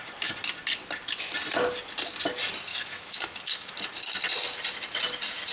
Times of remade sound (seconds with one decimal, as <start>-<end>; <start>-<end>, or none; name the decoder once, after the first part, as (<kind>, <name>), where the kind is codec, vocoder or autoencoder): 2.7-3.7 (autoencoder, DAC-VAE)